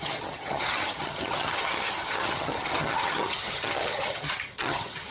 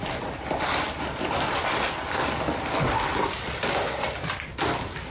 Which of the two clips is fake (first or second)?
first